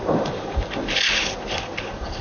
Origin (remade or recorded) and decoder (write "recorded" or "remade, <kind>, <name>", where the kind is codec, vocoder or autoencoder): recorded